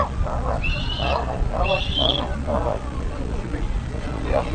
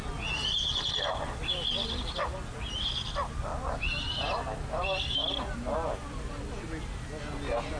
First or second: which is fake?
first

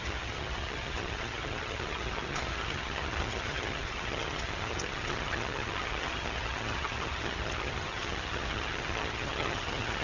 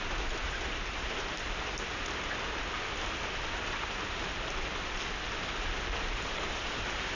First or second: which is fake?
first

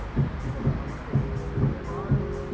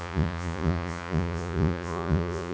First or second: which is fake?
second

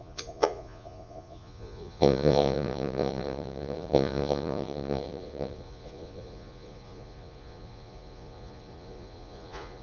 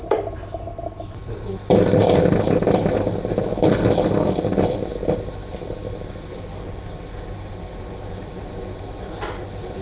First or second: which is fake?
first